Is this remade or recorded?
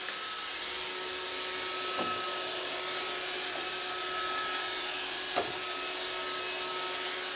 recorded